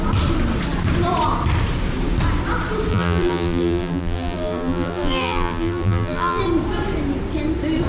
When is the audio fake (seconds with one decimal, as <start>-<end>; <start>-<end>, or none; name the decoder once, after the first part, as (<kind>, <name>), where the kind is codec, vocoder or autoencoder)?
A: 2.9-6.4 (vocoder, BigVGAN v2)